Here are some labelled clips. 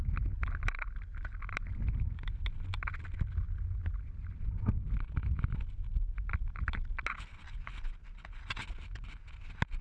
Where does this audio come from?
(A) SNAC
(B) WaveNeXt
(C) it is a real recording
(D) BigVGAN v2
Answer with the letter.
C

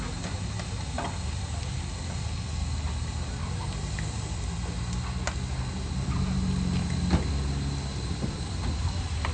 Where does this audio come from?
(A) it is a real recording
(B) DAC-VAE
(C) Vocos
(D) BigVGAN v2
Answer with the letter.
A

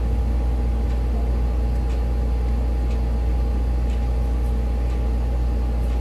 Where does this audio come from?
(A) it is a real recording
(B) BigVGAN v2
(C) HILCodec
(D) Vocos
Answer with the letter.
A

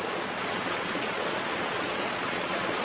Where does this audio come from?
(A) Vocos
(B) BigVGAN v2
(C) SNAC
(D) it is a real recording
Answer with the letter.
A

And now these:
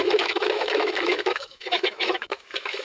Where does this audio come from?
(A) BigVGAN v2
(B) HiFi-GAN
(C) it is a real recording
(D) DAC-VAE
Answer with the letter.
D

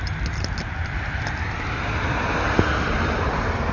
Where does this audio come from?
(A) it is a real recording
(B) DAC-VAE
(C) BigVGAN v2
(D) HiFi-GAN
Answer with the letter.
C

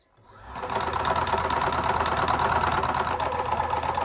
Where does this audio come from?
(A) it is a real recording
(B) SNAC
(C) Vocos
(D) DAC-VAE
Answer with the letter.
A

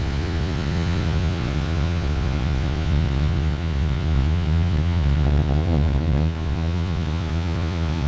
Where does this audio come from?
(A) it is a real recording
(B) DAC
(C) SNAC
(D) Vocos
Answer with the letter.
D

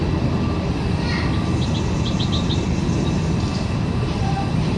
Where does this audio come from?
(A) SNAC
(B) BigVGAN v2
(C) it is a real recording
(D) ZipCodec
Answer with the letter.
C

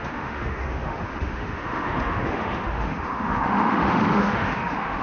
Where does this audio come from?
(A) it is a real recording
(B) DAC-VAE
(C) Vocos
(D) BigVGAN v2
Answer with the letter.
B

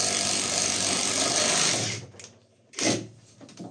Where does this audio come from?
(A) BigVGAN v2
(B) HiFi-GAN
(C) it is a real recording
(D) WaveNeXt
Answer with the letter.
C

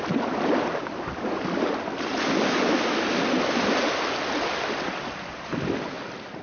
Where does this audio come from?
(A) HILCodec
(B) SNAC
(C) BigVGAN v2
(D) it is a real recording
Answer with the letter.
D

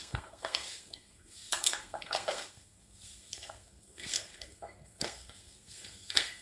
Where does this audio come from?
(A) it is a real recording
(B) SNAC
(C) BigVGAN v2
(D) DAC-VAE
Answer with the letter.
B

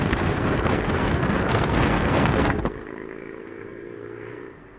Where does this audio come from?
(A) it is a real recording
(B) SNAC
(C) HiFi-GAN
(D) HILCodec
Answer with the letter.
B